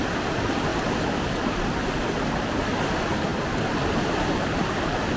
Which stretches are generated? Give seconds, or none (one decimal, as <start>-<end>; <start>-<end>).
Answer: 0.0-0.7; 1.6-5.2